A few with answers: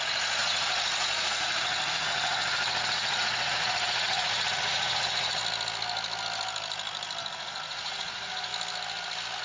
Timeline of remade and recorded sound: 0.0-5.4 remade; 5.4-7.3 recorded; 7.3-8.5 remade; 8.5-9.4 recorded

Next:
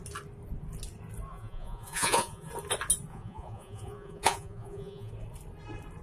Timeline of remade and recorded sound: 0.0-1.3 recorded; 1.3-2.5 remade; 2.5-3.1 recorded; 3.1-5.1 remade; 5.1-6.0 recorded

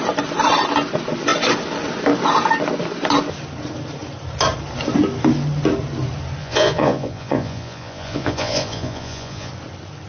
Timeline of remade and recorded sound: 0.0-6.4 recorded; 6.4-9.5 remade; 9.5-10.1 recorded

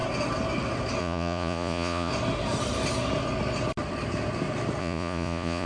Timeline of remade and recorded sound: 0.0-1.0 recorded; 1.0-2.1 remade; 2.1-4.8 recorded; 4.8-5.7 remade

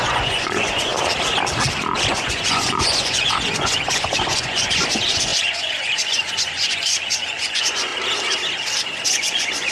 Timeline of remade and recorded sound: 0.0-0.9 remade; 0.9-2.1 recorded; 2.1-7.9 remade; 7.9-9.0 recorded; 9.0-9.7 remade